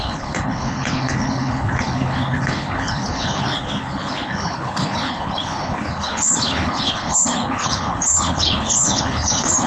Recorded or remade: remade